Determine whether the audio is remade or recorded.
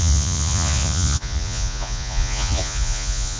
remade